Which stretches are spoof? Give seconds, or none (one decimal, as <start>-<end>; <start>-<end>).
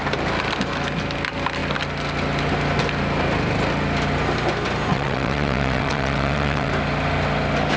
4.9-6.7